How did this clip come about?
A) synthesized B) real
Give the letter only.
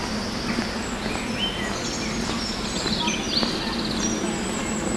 B